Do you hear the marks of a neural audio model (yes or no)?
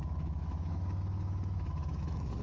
yes